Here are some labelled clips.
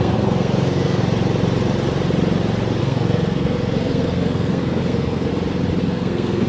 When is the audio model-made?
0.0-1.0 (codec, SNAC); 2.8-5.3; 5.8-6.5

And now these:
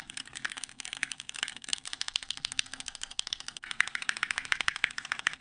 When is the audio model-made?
0.0-5.4 (codec, SNAC)

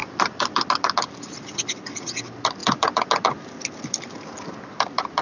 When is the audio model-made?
none

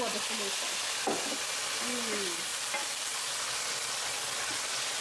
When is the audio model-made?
2.5-3.2 (vocoder, BigVGAN v2)

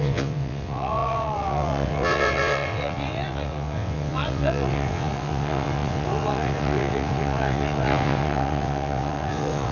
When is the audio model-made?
0.0-9.7 (vocoder, WaveNeXt)

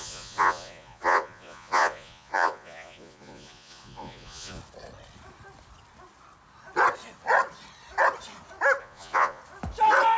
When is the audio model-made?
0.0-4.6 (vocoder, Vocos); 8.8-9.4